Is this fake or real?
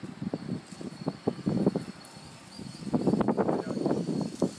real